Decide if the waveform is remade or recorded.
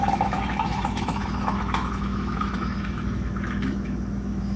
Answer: remade